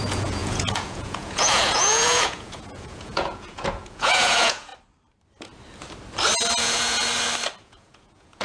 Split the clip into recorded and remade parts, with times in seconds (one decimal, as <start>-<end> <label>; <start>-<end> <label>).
0.0-4.7 remade; 4.7-6.6 recorded; 6.6-7.0 remade; 7.0-7.6 recorded; 7.6-8.4 remade

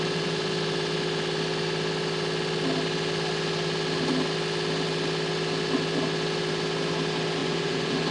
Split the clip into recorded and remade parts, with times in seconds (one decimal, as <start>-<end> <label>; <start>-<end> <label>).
0.0-7.4 recorded; 7.4-8.1 remade

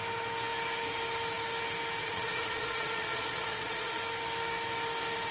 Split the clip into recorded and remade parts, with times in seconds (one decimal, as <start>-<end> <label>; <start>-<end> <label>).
0.0-2.0 recorded; 2.0-4.0 remade; 4.0-5.3 recorded

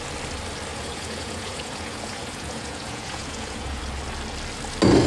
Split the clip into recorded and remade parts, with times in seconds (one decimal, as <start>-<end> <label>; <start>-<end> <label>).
0.0-0.7 recorded; 0.7-3.8 remade; 3.8-5.1 recorded

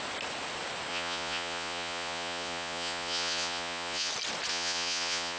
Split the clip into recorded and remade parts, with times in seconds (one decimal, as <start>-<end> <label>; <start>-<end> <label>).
0.0-0.9 recorded; 0.9-4.1 remade; 4.1-4.5 recorded; 4.5-5.4 remade

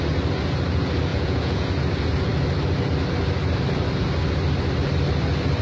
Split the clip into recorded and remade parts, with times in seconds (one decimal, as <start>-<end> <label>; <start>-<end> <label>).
0.0-1.1 recorded; 1.1-1.7 remade; 1.7-5.6 recorded

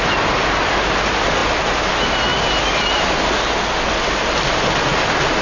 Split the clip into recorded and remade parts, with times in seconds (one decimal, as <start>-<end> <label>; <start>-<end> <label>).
0.0-5.4 recorded